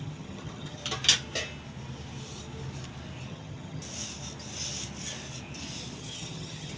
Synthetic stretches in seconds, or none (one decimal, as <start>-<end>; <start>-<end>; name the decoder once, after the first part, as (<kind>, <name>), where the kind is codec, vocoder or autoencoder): 0.0-0.8 (vocoder, HiFi-GAN); 3.3-3.8; 6.0-6.8